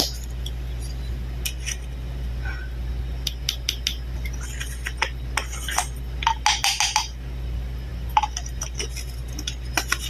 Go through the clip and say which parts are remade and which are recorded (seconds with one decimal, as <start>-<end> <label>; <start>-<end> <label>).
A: 0.0-10.1 recorded